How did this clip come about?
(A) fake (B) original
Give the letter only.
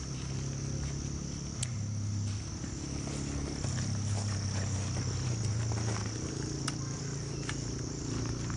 B